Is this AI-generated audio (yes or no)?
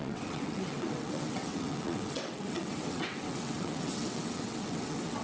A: yes